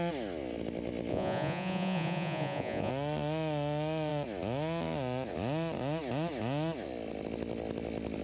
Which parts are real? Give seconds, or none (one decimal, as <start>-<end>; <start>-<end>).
0.0-1.1; 2.9-8.2